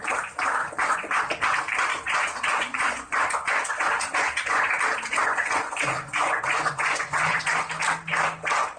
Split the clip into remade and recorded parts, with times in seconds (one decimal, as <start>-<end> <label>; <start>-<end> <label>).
0.0-0.6 recorded; 0.6-1.2 remade; 1.2-1.9 recorded; 1.9-4.7 remade; 4.7-5.2 recorded; 5.2-7.7 remade; 7.7-8.8 recorded